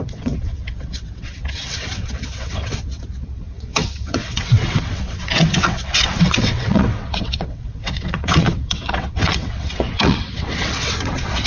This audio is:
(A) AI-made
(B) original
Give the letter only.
A